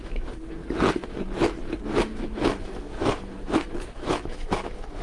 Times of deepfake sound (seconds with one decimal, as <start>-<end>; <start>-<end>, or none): 0.0-0.6; 2.0-5.0